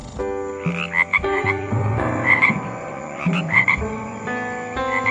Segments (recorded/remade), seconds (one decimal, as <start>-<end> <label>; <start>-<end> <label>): 0.0-1.1 recorded; 1.1-4.2 remade; 4.2-5.1 recorded